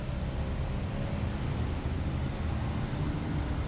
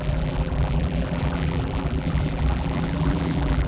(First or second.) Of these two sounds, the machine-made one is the second